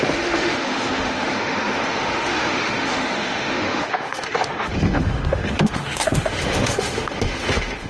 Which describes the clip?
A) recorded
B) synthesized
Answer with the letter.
B